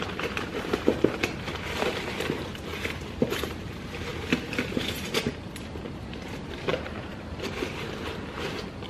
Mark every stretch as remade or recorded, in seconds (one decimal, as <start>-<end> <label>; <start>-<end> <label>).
0.0-8.9 remade